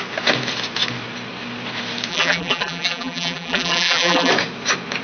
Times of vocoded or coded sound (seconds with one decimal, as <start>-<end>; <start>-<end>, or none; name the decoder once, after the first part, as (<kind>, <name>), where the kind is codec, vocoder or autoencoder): 2.1-4.3 (vocoder, BigVGAN v2)